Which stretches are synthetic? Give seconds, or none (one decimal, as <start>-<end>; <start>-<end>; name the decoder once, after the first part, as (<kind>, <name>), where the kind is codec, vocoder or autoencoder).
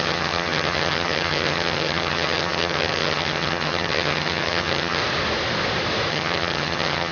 0.0-5.0 (vocoder, HiFi-GAN); 6.1-7.1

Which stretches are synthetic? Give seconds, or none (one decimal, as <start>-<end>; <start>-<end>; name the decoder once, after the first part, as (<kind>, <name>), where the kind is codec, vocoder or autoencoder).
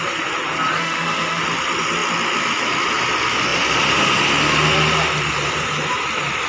0.8-1.4 (autoencoder, DAC-VAE)